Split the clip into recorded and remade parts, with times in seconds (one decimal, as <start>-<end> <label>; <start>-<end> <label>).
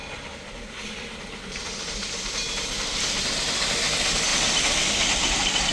0.0-5.7 recorded